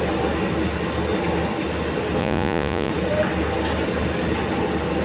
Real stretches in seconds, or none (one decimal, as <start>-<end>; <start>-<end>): 0.0-2.2; 2.9-5.0